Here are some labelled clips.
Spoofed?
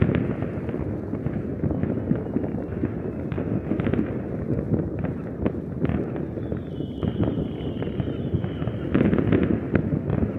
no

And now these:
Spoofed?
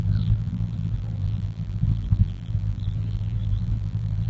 yes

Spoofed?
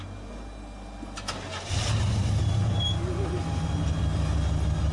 no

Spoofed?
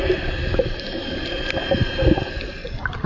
yes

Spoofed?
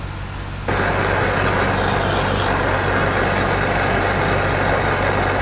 no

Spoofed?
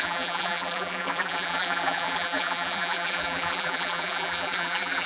yes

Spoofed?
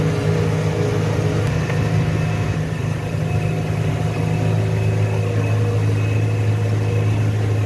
no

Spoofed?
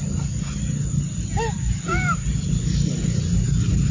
no